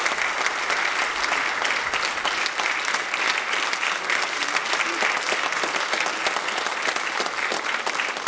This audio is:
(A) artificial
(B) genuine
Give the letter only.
B